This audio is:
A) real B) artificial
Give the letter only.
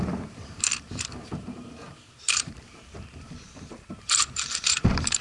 B